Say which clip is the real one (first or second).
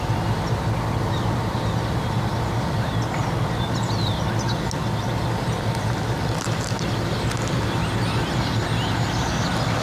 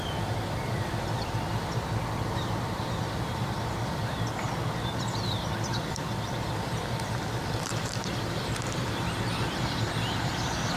first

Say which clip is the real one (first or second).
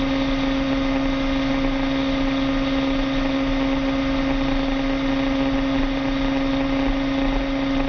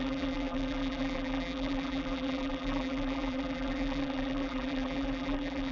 first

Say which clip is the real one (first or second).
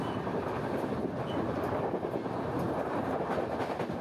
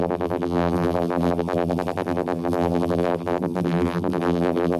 first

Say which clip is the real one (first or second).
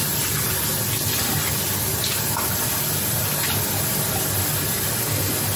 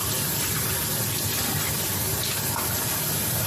first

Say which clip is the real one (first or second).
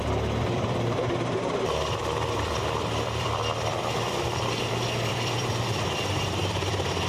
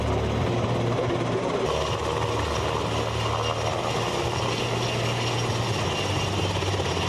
second